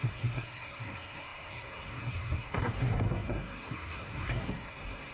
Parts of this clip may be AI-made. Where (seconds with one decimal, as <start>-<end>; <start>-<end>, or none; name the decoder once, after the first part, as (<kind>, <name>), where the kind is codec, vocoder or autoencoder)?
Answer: 0.0-5.1 (codec, SNAC)